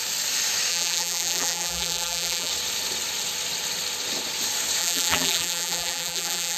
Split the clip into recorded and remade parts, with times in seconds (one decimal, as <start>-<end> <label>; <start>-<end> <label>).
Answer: 0.0-0.7 recorded; 0.7-2.5 remade; 2.5-4.8 recorded; 4.8-6.6 remade